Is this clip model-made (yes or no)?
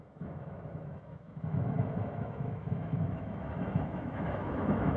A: yes